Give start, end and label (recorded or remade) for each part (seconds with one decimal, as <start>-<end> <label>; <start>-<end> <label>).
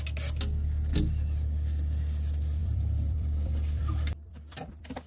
0.0-2.6 recorded; 2.6-5.1 remade